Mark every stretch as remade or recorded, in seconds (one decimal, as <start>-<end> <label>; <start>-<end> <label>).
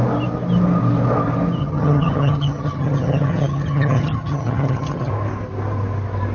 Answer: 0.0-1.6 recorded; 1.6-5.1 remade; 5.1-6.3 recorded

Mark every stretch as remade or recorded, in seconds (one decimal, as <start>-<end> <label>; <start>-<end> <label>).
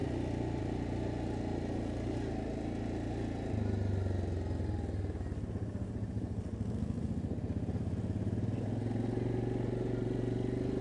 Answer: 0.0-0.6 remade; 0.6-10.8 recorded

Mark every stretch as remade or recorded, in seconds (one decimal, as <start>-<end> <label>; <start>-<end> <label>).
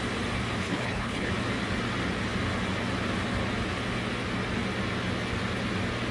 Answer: 0.0-0.6 recorded; 0.6-1.3 remade; 1.3-6.1 recorded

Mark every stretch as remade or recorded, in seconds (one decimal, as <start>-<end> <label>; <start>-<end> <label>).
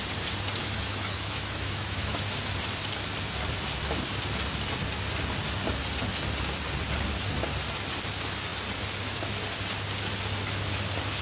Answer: 0.0-0.6 recorded; 0.6-2.1 remade; 2.1-11.2 recorded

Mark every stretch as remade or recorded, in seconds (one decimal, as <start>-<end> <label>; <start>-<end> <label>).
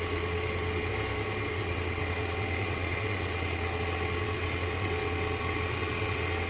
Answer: 0.0-0.9 remade; 0.9-1.5 recorded; 1.5-6.5 remade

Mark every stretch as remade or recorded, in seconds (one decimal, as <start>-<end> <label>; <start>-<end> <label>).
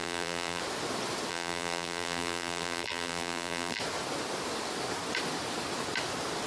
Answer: 0.0-0.6 remade; 0.6-1.3 recorded; 1.3-3.8 remade; 3.8-6.5 recorded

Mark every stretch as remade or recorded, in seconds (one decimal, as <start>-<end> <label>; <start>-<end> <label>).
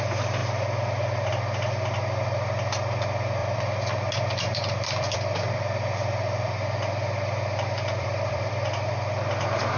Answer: 0.0-3.4 recorded; 3.4-8.5 remade; 8.5-9.8 recorded